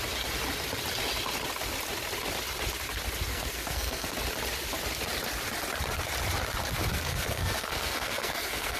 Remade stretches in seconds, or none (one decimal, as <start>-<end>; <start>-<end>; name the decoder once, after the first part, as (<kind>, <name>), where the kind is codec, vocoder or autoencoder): 3.3-4.1 (codec, SNAC); 6.9-8.8